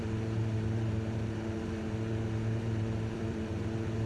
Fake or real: fake